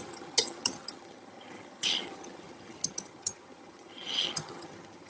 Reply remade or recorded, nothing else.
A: remade